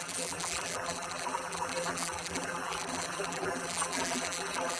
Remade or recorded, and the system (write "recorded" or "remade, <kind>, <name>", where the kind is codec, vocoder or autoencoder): remade, vocoder, BigVGAN v2